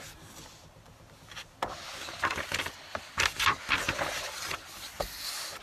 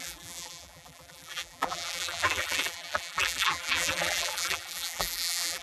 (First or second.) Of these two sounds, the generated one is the second